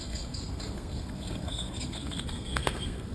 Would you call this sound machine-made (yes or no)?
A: yes